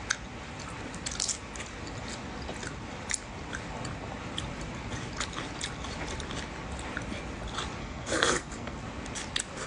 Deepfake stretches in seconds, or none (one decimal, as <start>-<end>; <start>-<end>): 7.8-8.8